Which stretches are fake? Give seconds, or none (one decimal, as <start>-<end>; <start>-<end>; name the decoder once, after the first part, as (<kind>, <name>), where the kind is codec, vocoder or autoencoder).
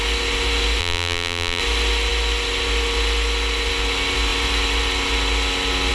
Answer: 0.8-1.6 (vocoder, BigVGAN v2)